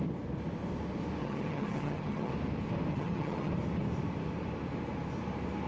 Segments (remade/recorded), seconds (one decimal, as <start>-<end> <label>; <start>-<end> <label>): 0.0-1.2 recorded; 1.2-2.3 remade; 2.3-2.9 recorded; 2.9-3.5 remade; 3.5-5.7 recorded